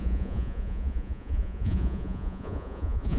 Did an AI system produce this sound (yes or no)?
yes